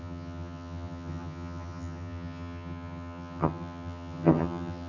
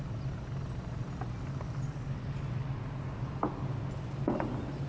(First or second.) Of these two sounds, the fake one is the first